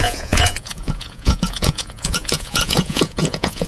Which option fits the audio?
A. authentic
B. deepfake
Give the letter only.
B